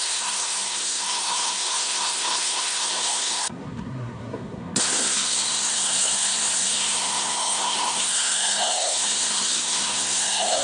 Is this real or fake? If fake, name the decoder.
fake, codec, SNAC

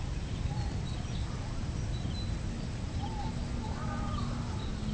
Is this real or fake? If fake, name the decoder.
real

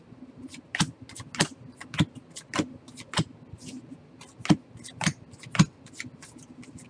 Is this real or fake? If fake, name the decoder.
real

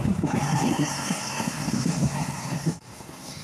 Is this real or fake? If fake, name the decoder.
fake, codec, SNAC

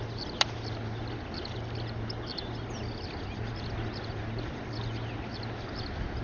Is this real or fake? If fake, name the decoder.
real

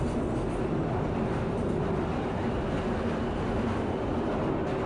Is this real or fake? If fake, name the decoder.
real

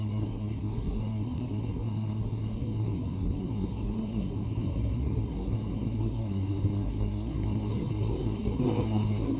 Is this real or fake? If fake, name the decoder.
fake, codec, SNAC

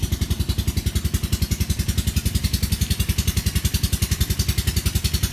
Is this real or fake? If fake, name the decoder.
real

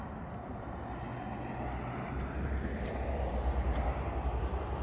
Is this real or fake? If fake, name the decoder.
real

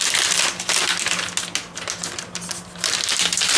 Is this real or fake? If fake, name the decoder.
real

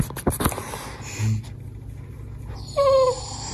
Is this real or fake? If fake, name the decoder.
real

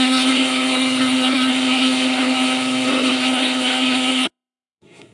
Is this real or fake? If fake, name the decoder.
fake, codec, SNAC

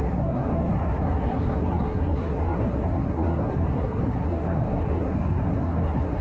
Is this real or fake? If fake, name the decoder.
fake, codec, SNAC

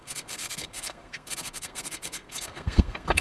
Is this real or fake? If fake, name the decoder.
fake, codec, SNAC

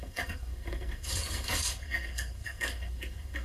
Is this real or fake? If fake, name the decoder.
fake, codec, SNAC